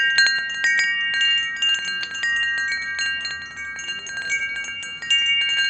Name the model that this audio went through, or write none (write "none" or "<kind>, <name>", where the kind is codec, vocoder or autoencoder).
none